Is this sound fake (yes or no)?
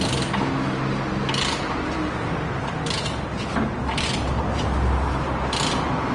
no